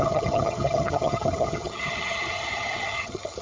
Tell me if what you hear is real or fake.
fake